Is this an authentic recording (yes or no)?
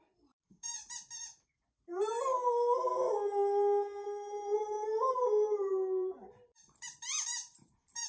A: no